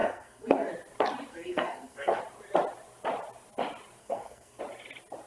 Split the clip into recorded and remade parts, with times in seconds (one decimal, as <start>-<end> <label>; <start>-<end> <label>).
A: 0.0-0.7 remade; 0.7-1.3 recorded; 1.3-2.2 remade; 2.2-4.0 recorded; 4.0-4.6 remade; 4.6-5.3 recorded

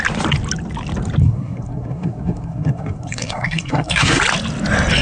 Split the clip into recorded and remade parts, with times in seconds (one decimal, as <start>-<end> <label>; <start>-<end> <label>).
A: 0.0-1.2 recorded; 1.2-4.2 remade; 4.2-5.0 recorded